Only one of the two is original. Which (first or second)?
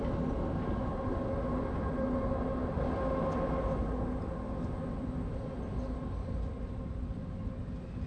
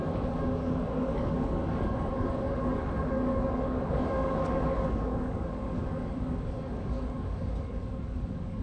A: first